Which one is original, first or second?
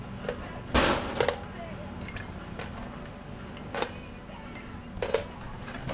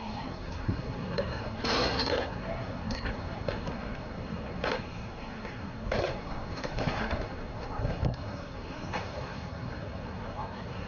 first